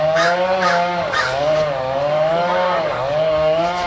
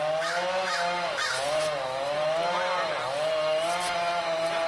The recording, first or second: second